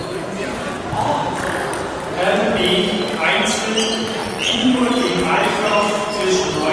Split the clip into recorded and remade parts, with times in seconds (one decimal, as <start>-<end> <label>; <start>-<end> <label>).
0.0-4.2 recorded; 4.2-5.1 remade; 5.1-6.7 recorded